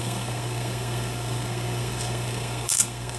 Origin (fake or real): fake